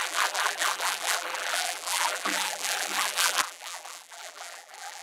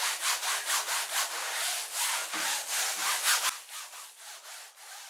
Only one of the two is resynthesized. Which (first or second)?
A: first